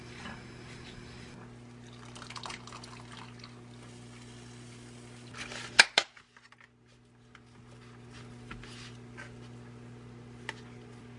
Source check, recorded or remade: recorded